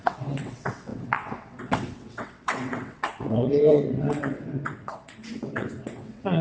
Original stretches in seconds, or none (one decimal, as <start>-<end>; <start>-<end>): none